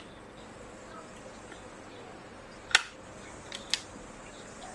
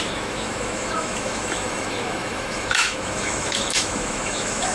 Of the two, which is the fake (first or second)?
second